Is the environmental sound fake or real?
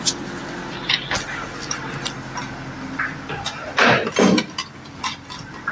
real